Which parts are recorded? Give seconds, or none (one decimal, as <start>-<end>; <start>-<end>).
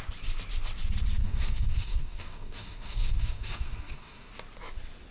0.0-1.2; 4.3-5.1